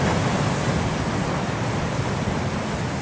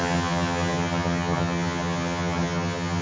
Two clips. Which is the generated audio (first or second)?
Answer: second